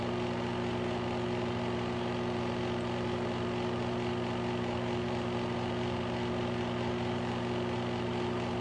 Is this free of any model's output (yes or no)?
yes